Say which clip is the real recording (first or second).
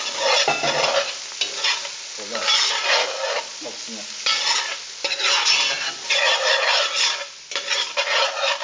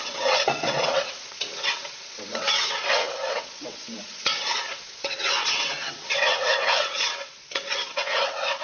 first